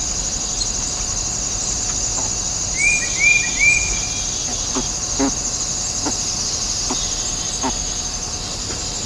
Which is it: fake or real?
real